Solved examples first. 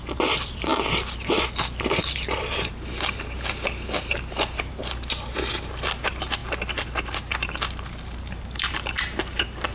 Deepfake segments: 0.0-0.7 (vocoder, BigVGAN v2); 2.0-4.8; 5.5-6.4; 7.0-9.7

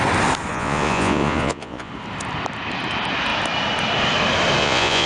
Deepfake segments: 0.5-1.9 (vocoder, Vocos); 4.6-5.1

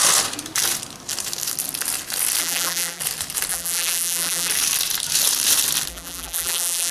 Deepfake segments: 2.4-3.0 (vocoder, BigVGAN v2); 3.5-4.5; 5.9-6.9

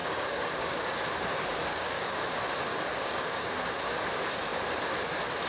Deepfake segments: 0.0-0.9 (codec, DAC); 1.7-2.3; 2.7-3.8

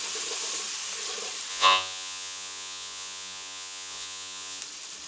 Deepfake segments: 1.5-4.6 (vocoder, Vocos)

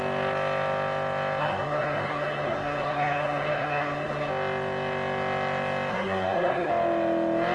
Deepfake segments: 1.4-4.3 (codec, SNAC); 5.9-6.7